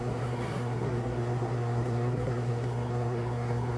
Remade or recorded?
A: remade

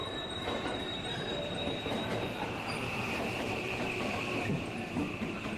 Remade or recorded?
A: remade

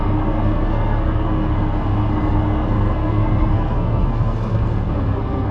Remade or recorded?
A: remade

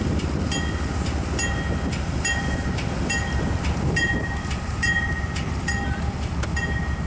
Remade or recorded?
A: recorded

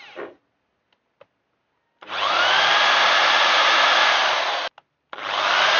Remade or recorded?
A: recorded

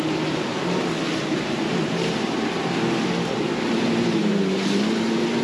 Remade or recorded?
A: remade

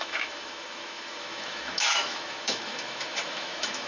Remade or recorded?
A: remade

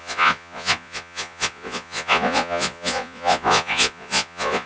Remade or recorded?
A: remade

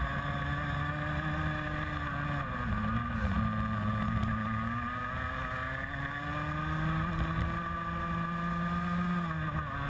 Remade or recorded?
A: recorded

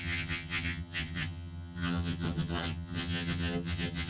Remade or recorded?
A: remade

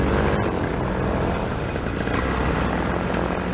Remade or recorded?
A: recorded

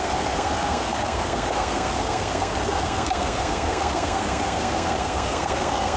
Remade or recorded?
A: remade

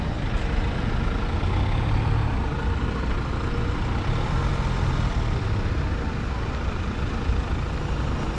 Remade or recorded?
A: recorded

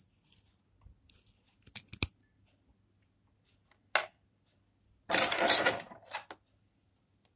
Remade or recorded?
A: recorded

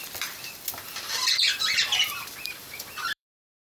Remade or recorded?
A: remade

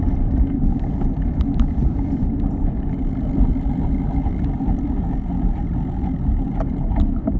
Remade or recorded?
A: remade